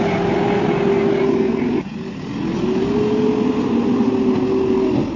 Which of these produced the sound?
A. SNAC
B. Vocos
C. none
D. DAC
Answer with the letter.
C